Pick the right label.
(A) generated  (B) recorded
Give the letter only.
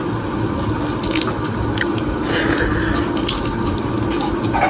B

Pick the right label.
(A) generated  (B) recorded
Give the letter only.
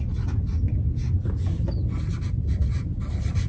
B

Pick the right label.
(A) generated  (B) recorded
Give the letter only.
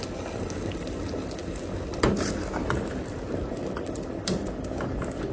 B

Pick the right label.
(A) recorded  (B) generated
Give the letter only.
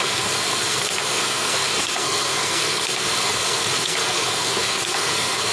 B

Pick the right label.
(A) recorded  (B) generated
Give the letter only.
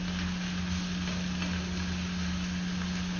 A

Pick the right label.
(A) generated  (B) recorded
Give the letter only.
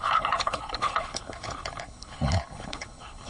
A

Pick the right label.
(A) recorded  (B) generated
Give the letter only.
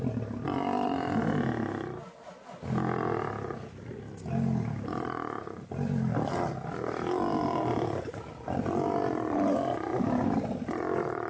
A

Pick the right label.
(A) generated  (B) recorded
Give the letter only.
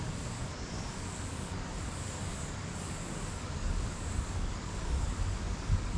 A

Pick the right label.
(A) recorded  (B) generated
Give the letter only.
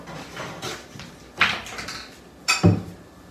A